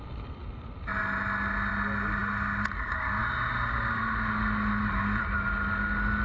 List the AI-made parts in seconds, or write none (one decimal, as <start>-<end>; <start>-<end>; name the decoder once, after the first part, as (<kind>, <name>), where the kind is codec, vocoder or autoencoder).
none